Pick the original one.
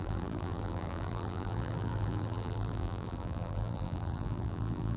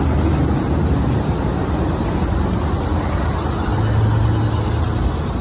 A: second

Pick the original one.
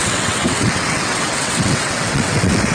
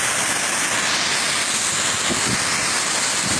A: second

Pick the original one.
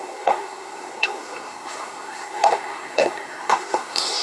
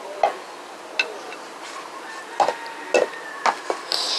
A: second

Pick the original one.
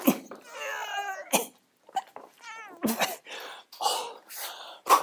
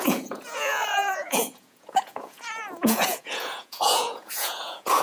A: first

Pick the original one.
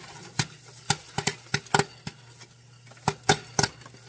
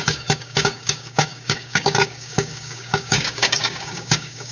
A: first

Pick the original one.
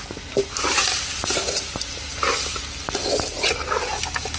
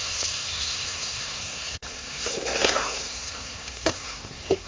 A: first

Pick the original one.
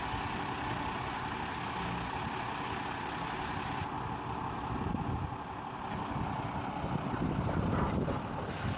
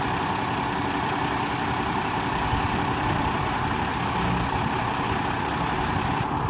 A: first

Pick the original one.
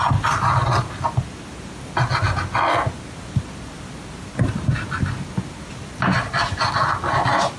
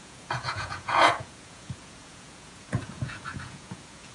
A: first